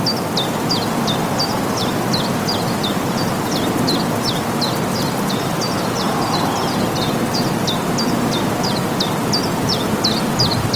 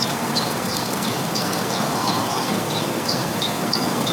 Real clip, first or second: first